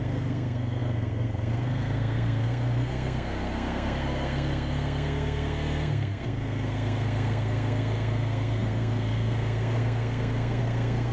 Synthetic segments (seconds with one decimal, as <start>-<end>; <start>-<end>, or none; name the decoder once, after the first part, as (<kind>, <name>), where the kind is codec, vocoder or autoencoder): 0.0-11.1 (codec, SNAC)